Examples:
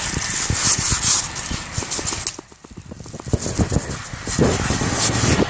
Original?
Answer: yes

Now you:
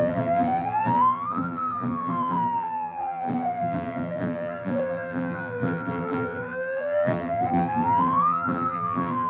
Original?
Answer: no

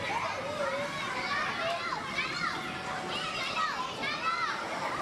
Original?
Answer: yes